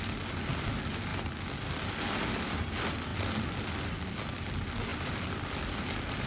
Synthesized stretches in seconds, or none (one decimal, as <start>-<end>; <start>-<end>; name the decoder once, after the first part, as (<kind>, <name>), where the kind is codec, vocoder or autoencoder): none